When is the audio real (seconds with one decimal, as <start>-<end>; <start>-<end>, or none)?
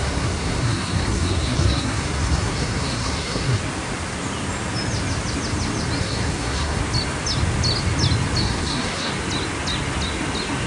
3.6-6.0; 6.8-8.4; 9.1-10.7